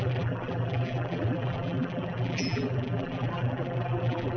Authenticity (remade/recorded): remade